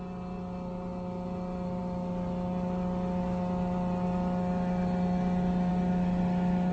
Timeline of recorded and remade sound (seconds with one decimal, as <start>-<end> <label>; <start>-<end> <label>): 0.0-6.7 recorded